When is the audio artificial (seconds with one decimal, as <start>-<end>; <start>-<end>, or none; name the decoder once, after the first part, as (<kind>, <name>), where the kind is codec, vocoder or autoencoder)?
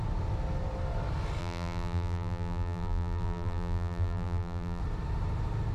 1.4-4.8 (vocoder, BigVGAN v2)